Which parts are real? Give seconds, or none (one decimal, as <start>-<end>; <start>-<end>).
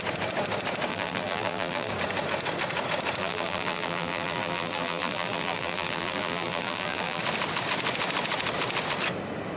0.0-0.9; 1.9-3.2; 7.2-9.6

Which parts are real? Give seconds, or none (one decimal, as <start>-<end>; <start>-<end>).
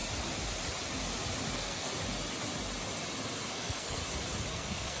0.0-1.5; 1.9-3.5; 4.0-4.5